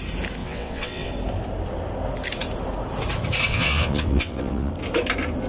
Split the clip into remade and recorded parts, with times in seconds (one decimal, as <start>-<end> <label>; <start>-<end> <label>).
0.0-0.4 recorded; 0.4-1.1 remade; 1.1-3.5 recorded; 3.5-4.7 remade; 4.7-5.5 recorded